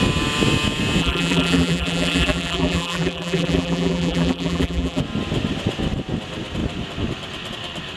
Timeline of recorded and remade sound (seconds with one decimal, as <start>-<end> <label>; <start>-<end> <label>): 0.0-1.0 recorded; 1.0-5.0 remade; 5.0-8.0 recorded